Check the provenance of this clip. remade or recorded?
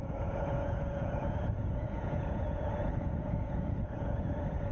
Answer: remade